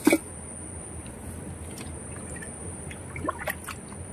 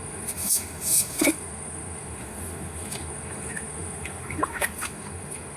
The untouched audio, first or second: first